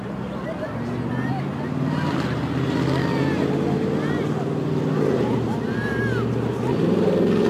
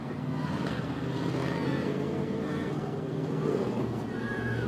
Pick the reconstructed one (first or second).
second